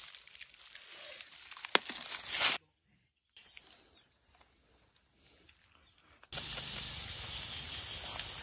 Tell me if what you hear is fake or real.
real